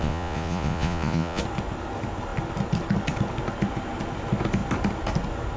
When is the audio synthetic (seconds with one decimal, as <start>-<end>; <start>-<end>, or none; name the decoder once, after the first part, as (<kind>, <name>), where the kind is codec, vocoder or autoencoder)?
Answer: 0.0-1.4 (vocoder, Vocos)